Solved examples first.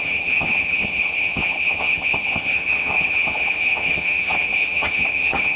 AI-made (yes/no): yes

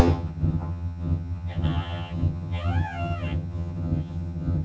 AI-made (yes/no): yes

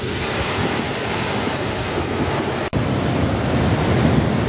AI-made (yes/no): no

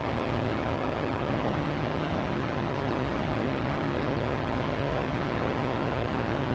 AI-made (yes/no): yes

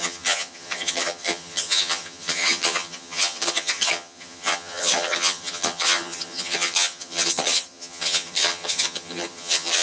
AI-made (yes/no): yes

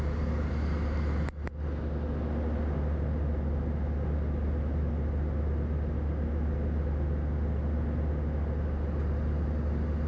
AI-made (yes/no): no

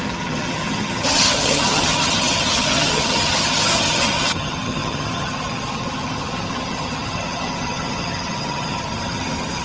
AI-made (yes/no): yes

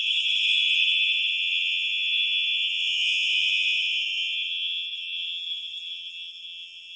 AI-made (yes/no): yes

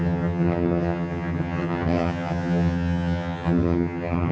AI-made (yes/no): yes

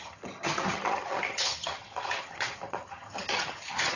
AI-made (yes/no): yes